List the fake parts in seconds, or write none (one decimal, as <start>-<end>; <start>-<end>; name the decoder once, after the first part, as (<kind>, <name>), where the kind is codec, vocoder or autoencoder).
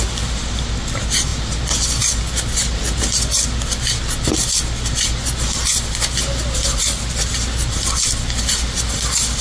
none